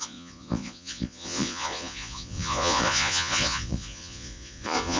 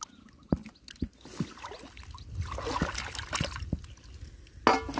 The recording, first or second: second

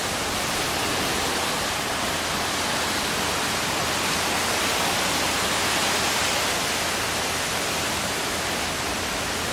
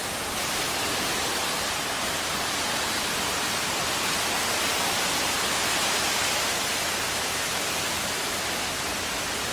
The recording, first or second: first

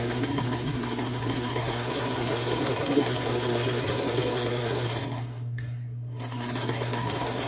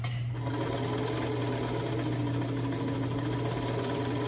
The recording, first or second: second